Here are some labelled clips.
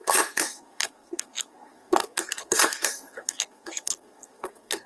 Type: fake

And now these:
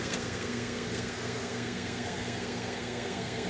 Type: fake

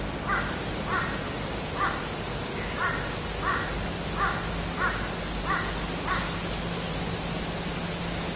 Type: real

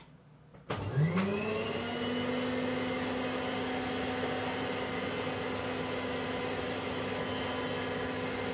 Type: real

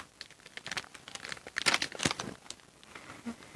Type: real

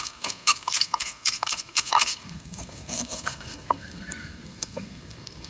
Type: fake